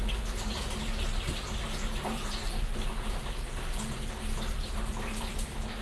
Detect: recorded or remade remade